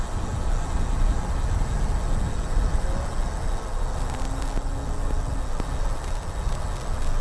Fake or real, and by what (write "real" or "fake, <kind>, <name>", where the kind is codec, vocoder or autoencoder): real